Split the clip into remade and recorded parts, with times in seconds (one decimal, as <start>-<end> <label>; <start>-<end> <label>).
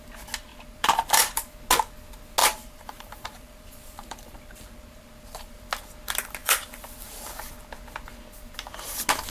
0.0-0.5 recorded; 0.5-1.5 remade; 1.5-2.4 recorded; 2.4-5.6 remade; 5.6-6.4 recorded; 6.4-7.5 remade; 7.5-9.3 recorded